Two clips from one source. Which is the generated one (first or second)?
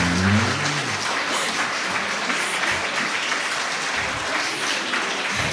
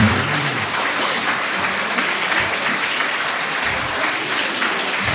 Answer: second